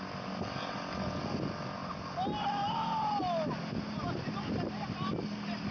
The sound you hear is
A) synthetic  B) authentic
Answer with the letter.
B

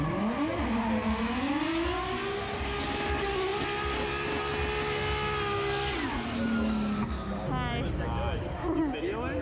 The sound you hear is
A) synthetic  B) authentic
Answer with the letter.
B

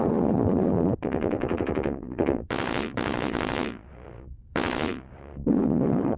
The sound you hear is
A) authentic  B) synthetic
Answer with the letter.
B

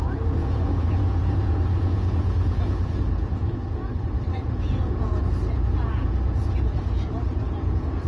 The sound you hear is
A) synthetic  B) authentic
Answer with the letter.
A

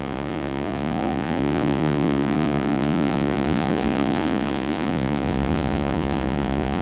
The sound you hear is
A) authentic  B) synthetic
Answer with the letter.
B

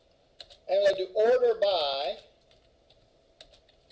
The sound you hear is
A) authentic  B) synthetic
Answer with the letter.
A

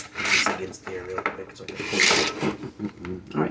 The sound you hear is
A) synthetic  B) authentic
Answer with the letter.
B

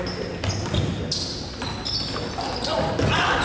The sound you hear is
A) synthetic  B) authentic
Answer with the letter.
B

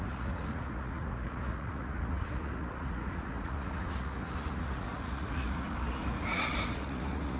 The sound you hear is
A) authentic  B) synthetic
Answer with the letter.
B